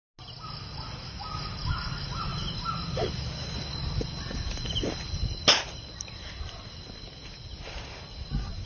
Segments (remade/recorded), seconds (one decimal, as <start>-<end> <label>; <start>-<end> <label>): 0.0-8.7 recorded